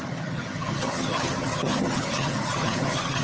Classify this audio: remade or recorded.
remade